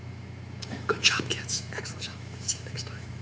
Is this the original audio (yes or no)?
no